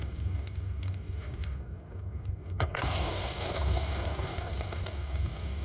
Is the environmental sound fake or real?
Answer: fake